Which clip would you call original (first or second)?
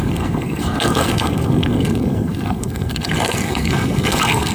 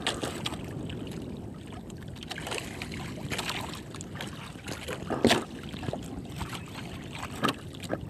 second